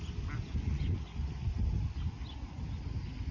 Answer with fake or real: real